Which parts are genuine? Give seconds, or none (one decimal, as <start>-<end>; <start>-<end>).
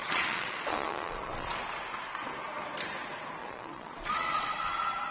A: 1.6-3.4; 4.5-5.1